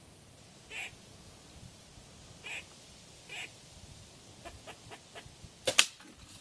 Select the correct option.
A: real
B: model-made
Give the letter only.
A